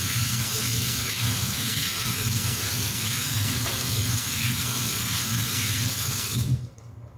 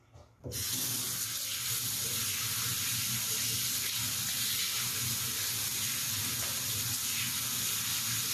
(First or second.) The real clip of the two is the second